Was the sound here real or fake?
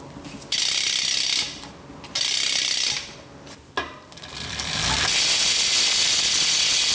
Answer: real